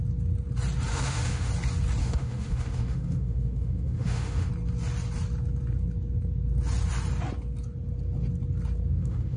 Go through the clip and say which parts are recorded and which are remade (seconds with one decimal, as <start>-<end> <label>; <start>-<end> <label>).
0.0-0.9 recorded; 0.9-1.5 remade; 1.5-2.0 recorded; 2.0-4.5 remade; 4.5-8.9 recorded; 8.9-9.4 remade